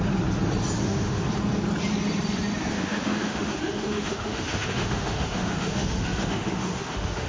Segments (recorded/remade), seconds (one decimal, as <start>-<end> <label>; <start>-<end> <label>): 0.0-0.8 recorded; 0.8-1.3 remade; 1.3-2.7 recorded; 2.7-7.3 remade

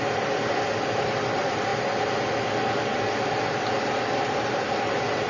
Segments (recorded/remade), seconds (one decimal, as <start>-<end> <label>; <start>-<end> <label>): 0.0-5.3 recorded

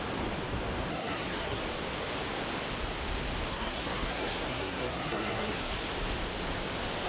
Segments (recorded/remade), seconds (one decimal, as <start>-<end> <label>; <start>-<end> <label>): 0.0-0.9 recorded; 0.9-1.6 remade; 1.6-3.5 recorded; 3.5-5.7 remade; 5.7-7.1 recorded

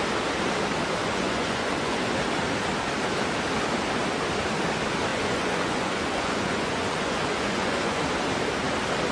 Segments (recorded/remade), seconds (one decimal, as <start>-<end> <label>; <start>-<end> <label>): 0.0-1.0 recorded; 1.0-2.2 remade; 2.2-5.1 recorded; 5.1-8.0 remade; 8.0-9.1 recorded

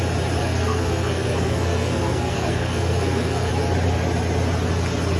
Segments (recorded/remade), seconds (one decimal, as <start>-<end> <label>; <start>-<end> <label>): 0.0-0.4 recorded; 0.4-3.5 remade; 3.5-5.2 recorded

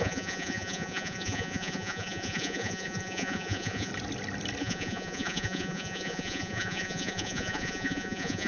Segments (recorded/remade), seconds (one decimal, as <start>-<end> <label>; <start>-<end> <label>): 0.0-3.9 remade; 3.9-4.6 recorded; 4.6-8.5 remade

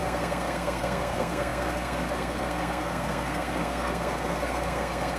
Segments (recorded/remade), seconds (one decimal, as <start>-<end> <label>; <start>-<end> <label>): 0.0-5.2 remade

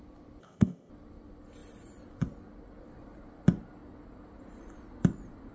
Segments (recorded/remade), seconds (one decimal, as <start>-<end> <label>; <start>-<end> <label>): 0.0-0.4 recorded; 0.4-0.9 remade; 0.9-5.5 recorded